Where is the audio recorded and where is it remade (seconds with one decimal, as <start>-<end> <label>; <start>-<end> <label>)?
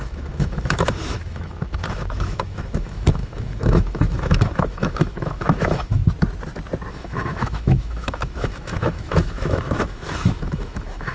0.0-6.0 remade; 6.0-6.9 recorded; 6.9-11.1 remade